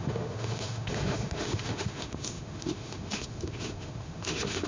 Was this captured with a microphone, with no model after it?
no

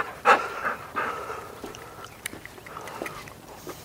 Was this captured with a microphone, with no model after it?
no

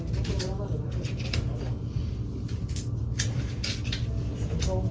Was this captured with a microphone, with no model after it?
yes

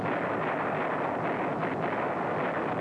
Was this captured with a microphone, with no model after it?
yes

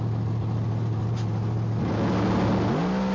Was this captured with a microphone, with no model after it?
yes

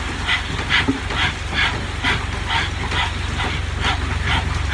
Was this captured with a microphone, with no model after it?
yes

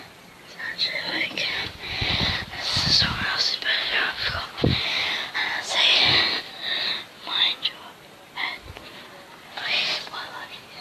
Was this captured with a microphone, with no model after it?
no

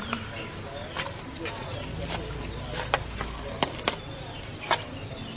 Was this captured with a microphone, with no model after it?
yes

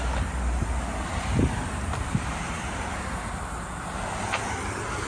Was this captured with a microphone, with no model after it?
yes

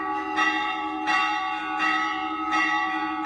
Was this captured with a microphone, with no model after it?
yes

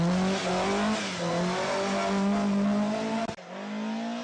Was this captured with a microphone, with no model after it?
yes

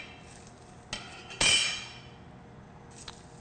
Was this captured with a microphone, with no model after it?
yes